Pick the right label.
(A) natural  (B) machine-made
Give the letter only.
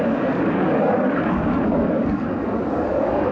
B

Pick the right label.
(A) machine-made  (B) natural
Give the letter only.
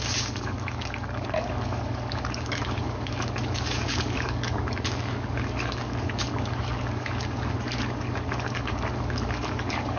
A